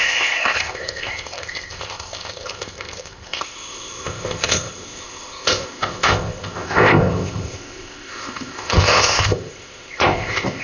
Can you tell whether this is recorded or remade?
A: remade